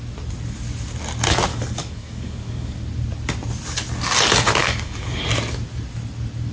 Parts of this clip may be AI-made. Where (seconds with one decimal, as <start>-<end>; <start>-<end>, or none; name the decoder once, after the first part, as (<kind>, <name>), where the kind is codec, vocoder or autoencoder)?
1.5-2.8 (codec, DAC); 4.6-5.3